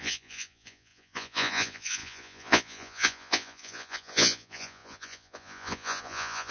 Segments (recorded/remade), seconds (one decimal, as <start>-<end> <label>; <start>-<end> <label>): 0.0-6.5 remade